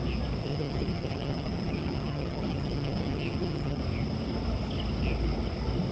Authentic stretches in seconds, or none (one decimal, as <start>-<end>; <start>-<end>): 0.0-0.4; 3.8-5.9